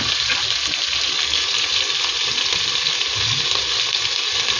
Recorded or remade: recorded